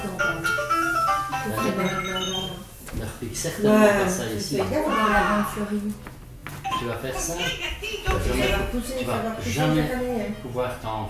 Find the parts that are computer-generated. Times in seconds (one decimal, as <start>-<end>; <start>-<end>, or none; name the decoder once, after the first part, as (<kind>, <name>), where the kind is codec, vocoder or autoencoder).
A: none